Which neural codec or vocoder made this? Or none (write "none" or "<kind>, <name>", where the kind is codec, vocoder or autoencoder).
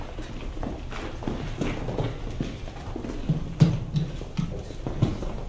none